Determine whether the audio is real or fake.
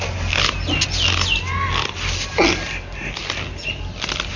real